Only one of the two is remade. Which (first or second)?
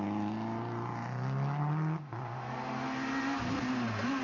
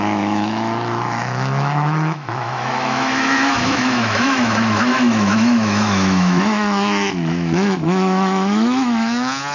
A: second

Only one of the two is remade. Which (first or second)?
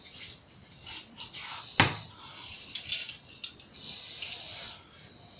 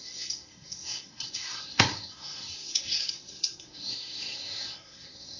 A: second